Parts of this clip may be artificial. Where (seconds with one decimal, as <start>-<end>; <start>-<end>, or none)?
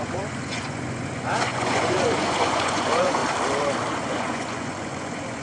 0.0-3.2; 4.1-5.4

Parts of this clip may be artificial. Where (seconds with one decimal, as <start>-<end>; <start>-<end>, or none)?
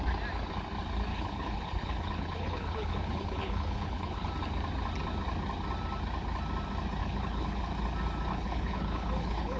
1.1-4.3; 7.0-7.6; 8.3-9.6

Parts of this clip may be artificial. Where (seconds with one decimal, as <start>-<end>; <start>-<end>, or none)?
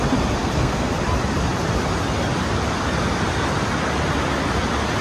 0.4-0.9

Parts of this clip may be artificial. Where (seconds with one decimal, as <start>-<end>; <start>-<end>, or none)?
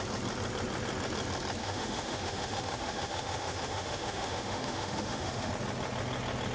1.6-5.5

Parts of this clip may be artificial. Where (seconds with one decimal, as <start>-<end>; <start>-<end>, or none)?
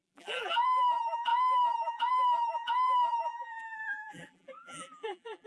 0.0-5.5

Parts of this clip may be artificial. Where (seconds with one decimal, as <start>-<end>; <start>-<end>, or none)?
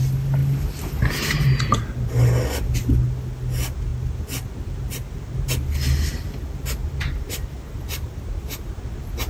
6.8-8.8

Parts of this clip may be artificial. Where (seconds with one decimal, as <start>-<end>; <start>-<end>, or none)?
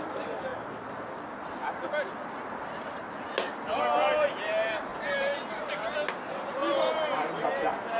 4.9-5.7; 6.6-8.0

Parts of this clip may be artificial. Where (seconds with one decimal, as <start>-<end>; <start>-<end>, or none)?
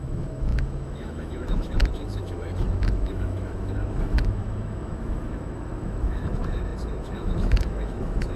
0.0-8.4